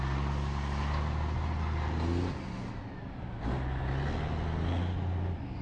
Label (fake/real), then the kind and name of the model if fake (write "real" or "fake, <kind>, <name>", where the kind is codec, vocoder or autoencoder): real